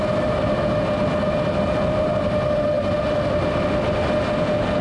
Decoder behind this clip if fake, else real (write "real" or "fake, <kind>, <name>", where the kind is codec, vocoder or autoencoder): real